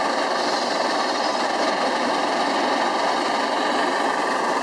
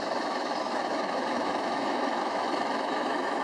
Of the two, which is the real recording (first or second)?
first